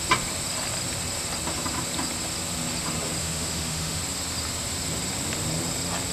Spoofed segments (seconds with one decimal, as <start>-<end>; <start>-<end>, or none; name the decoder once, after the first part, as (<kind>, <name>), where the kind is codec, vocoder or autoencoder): 3.2-4.0 (autoencoder, DAC-VAE)